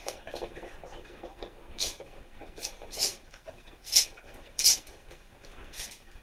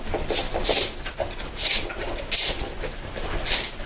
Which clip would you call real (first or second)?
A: second